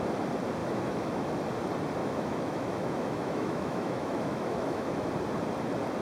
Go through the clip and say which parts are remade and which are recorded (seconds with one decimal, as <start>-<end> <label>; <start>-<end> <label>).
0.0-0.6 recorded; 0.6-1.3 remade; 1.3-2.0 recorded; 2.0-5.1 remade; 5.1-6.0 recorded